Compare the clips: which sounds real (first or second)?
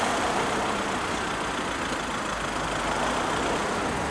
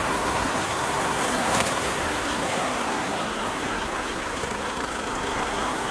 first